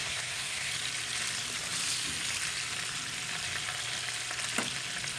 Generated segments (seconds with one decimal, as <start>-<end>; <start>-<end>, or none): 0.0-0.7